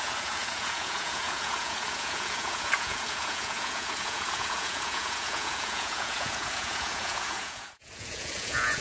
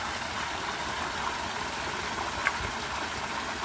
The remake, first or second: first